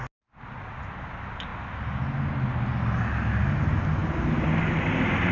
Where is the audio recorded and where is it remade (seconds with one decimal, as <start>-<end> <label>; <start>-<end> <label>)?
0.0-5.3 recorded